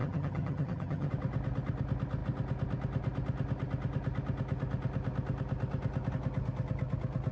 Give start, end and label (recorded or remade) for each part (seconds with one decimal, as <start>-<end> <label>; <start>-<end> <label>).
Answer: 0.0-1.1 remade; 1.1-7.3 recorded